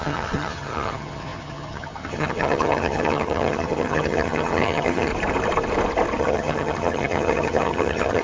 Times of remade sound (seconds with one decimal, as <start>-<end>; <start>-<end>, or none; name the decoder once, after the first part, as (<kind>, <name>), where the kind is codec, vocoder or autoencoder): 0.0-5.1 (vocoder, HiFi-GAN); 6.2-8.2